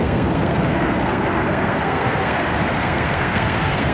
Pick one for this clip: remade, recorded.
remade